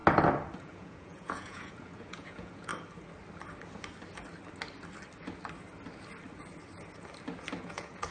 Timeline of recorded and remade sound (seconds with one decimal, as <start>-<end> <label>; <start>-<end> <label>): 0.0-0.6 recorded; 0.6-2.7 remade; 2.7-7.6 recorded; 7.6-8.1 remade